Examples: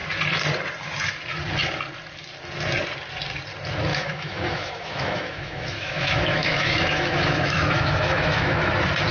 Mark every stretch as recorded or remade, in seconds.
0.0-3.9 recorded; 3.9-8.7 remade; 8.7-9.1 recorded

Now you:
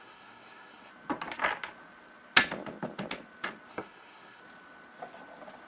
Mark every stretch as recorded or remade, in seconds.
0.0-0.9 remade; 0.9-3.7 recorded; 3.7-4.4 remade; 4.4-5.7 recorded

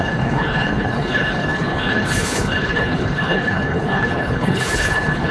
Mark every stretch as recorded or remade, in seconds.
0.0-5.3 remade

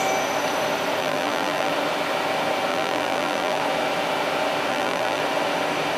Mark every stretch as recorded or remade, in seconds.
0.0-1.0 recorded; 1.0-1.7 remade; 1.7-2.7 recorded; 2.7-3.6 remade; 3.6-4.7 recorded; 4.7-5.2 remade; 5.2-6.0 recorded

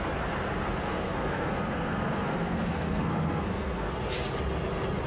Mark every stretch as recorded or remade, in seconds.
0.0-0.8 recorded; 0.8-3.9 remade; 3.9-5.1 recorded

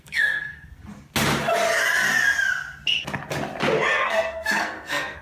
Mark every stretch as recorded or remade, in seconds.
0.0-0.8 remade; 0.8-3.9 recorded; 3.9-5.2 remade